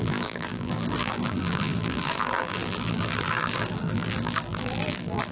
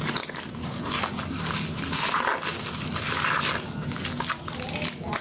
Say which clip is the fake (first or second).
first